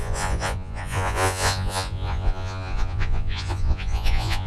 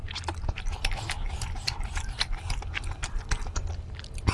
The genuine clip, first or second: second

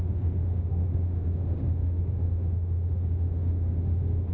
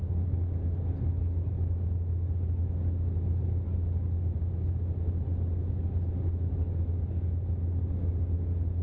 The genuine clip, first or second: second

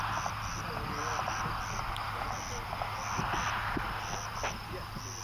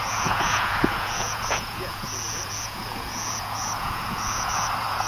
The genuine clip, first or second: first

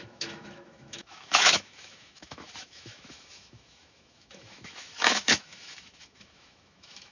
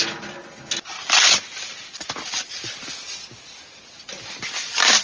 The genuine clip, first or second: second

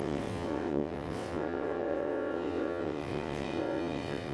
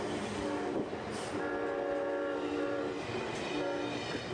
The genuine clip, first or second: second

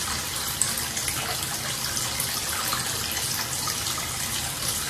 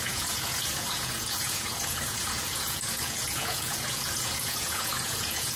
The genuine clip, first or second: first